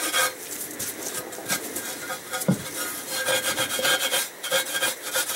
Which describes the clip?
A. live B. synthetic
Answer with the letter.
A